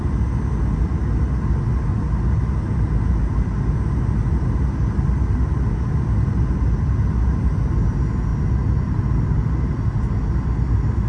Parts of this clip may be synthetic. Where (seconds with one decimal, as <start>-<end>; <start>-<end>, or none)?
none